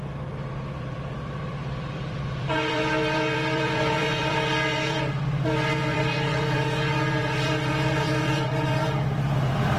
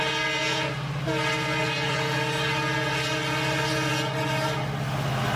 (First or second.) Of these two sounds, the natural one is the second